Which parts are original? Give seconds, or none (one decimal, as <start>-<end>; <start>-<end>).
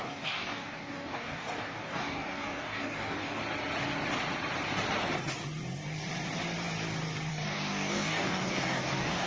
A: 3.4-7.3